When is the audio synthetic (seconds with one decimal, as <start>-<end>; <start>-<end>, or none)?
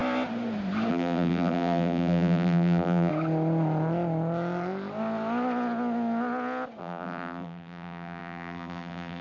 0.9-3.1; 6.8-9.2